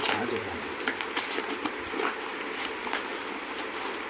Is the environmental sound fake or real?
real